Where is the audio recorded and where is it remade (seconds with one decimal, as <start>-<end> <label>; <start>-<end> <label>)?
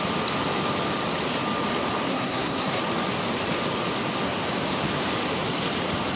0.0-2.1 recorded; 2.1-2.8 remade; 2.8-6.2 recorded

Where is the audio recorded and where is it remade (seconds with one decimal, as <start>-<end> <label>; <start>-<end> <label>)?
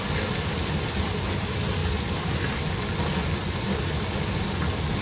0.0-5.0 recorded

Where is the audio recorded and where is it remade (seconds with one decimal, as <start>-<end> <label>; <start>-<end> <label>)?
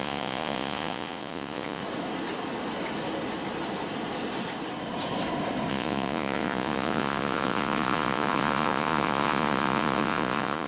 0.0-1.8 remade; 1.8-5.7 recorded; 5.7-10.7 remade